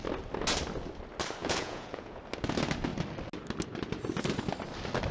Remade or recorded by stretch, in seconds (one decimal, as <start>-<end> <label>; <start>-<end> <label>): 0.0-1.4 recorded; 1.4-2.2 remade; 2.2-5.1 recorded